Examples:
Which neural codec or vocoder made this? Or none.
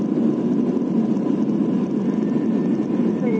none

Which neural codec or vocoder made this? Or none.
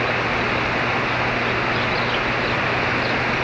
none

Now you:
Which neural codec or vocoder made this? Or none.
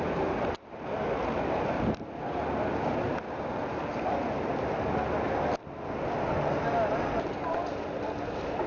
none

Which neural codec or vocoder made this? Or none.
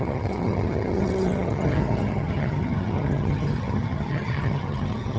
vocoder, HiFi-GAN